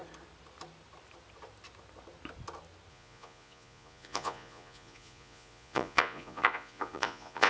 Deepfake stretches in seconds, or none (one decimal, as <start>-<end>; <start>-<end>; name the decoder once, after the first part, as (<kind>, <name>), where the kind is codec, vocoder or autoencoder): 2.9-7.5 (vocoder, Vocos)